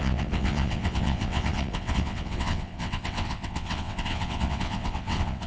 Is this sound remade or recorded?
remade